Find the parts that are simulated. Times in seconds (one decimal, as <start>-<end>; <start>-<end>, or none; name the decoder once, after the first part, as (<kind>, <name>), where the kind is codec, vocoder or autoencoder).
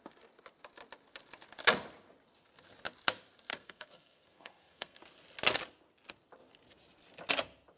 3.5-5.0 (codec, SNAC)